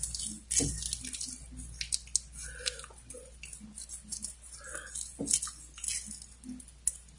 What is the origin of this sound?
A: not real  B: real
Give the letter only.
B